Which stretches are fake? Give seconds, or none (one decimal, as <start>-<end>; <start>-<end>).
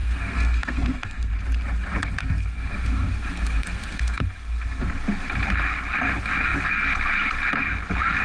0.0-1.3; 2.2-4.8